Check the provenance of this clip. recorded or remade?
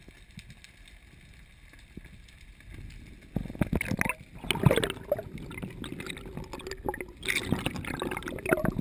recorded